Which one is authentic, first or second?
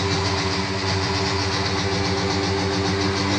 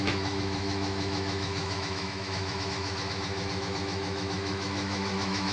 first